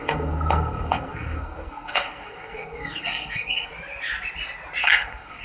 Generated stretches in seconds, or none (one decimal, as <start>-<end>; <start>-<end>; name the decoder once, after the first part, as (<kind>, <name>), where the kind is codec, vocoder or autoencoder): 0.0-3.7 (codec, SNAC); 4.8-5.4